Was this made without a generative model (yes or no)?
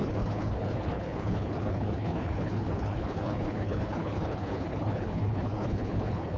no